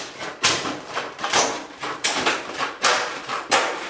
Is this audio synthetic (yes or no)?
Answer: yes